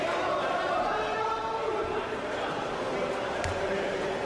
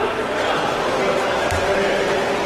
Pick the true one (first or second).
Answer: second